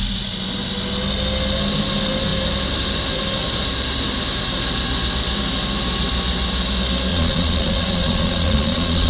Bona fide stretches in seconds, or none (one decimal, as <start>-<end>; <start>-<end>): 0.0-7.1

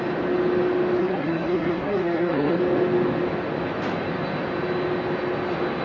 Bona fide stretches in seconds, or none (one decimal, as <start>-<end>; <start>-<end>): 0.0-1.0; 2.6-5.8

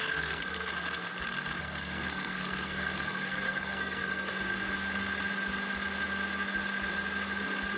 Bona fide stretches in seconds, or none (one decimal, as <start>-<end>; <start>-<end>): 0.7-1.6; 4.3-7.8

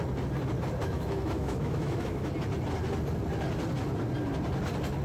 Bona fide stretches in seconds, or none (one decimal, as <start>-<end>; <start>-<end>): 0.0-0.8; 2.3-5.0

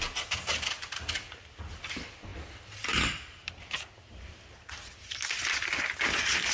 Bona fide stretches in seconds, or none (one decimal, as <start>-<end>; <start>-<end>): 0.0-6.5

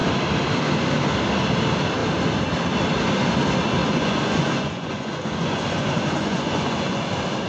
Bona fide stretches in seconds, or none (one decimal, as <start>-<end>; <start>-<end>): 0.0-3.8; 7.0-7.5

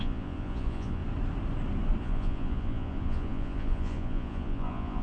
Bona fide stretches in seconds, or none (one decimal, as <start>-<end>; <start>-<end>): 1.0-2.0

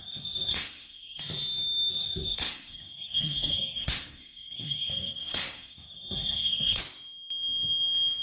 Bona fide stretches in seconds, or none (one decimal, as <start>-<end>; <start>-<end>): 1.2-1.9; 6.8-8.2